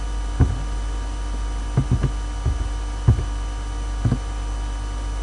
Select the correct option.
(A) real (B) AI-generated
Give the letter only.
A